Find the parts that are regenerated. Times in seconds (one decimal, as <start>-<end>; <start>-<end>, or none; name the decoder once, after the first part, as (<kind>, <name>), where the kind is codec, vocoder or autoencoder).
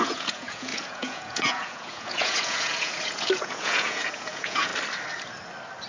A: 0.0-4.7 (vocoder, Vocos)